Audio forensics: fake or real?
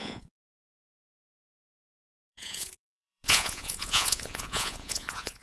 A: fake